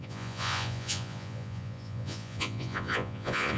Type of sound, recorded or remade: remade